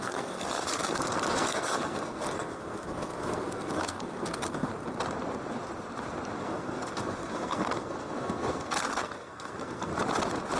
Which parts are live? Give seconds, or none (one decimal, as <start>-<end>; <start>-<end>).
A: 4.7-6.4; 9.9-10.6